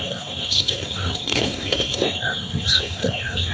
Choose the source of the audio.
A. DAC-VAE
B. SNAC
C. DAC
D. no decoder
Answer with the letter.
B